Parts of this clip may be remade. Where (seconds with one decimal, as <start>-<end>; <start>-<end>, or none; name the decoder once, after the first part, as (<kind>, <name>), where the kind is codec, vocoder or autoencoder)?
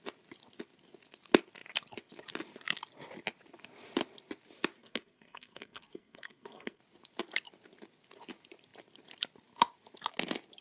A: 4.8-6.8 (codec, SNAC)